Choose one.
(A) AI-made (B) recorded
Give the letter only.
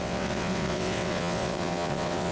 A